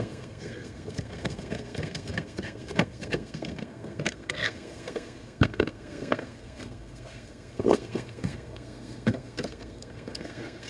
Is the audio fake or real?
fake